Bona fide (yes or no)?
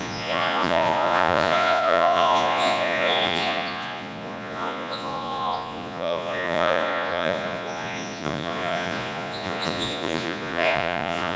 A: no